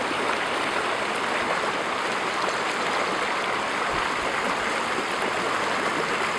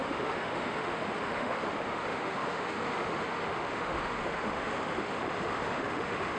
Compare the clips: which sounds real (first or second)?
first